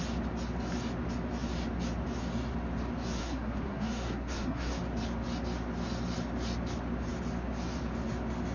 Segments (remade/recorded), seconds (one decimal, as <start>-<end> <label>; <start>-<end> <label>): 0.0-3.2 recorded; 3.2-4.8 remade; 4.8-8.5 recorded